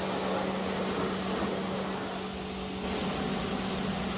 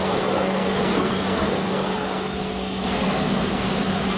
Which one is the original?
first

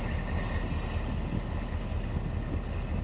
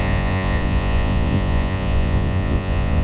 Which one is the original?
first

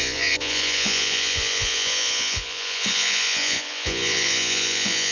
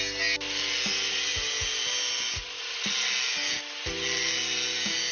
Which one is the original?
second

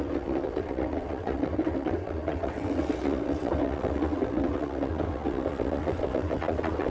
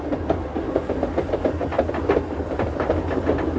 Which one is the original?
second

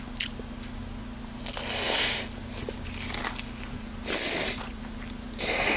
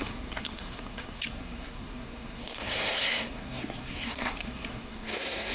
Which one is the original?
first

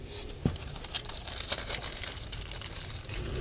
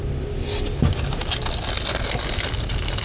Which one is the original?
second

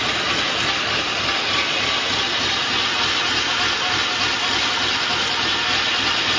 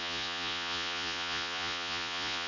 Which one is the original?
first